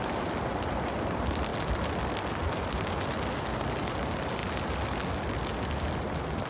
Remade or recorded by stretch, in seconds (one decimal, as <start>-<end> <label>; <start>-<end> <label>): 0.0-6.5 recorded